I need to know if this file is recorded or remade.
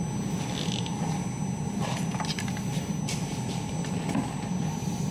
recorded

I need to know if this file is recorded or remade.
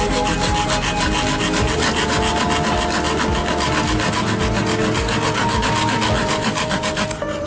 recorded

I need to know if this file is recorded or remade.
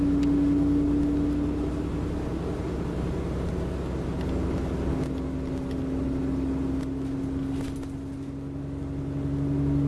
recorded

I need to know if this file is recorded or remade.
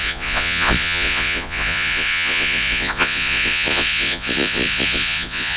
remade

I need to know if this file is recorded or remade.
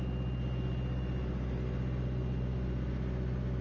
recorded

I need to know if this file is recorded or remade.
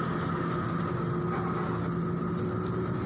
recorded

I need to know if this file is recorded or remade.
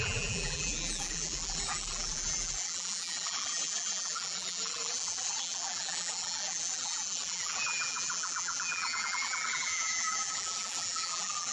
remade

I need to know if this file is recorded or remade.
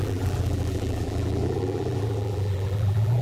remade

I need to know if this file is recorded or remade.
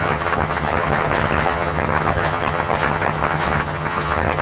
remade